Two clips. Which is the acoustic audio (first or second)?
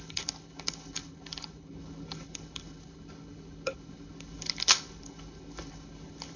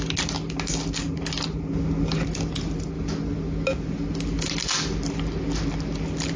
second